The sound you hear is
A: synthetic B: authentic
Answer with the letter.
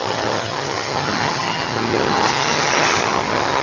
A